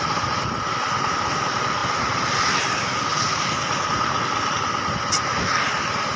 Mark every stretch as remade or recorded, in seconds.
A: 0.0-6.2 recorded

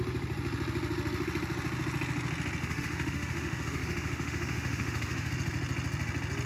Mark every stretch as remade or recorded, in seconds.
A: 0.0-2.6 recorded; 2.6-5.3 remade; 5.3-6.5 recorded

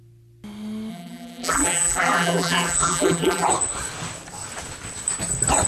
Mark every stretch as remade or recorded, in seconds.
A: 0.0-0.9 recorded; 0.9-3.5 remade; 3.5-5.7 recorded

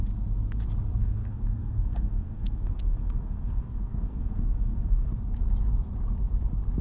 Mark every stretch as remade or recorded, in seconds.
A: 0.0-1.0 recorded; 1.0-5.1 remade; 5.1-6.8 recorded

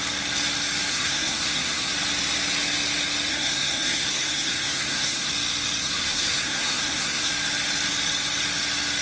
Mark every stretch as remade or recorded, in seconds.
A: 0.0-0.9 recorded; 0.9-1.9 remade; 1.9-3.3 recorded; 3.3-5.3 remade; 5.3-5.8 recorded; 5.8-7.3 remade; 7.3-9.0 recorded